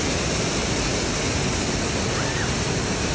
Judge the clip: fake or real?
real